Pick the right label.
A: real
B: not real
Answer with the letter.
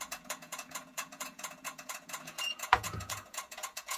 B